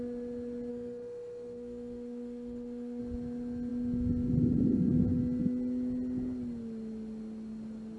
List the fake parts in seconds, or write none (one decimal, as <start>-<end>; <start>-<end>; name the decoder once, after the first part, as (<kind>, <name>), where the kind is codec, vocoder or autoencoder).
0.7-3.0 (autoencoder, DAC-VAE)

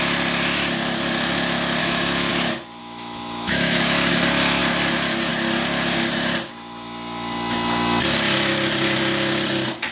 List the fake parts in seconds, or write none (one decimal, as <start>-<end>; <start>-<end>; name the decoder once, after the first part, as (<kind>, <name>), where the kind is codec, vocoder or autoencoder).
1.8-2.3 (autoencoder, DAC-VAE); 2.8-4.1

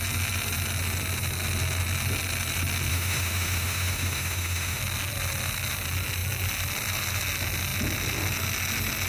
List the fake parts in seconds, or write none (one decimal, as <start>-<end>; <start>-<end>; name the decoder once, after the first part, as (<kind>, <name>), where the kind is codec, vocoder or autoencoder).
2.9-4.8 (autoencoder, DAC-VAE)